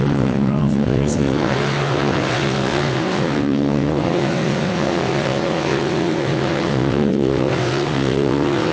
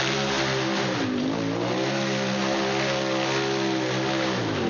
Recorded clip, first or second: second